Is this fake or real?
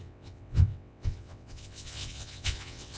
fake